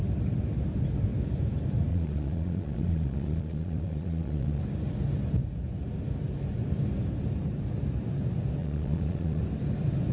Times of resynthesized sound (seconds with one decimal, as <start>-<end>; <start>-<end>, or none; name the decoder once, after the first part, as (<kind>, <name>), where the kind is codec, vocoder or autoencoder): 1.9-4.6 (vocoder, Vocos); 8.6-9.4